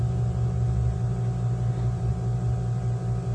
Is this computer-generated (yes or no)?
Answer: no